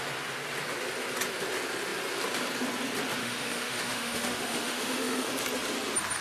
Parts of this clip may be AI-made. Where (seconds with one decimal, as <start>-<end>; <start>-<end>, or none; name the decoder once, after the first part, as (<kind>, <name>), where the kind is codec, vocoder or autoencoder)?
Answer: 3.2-5.3 (autoencoder, DAC-VAE)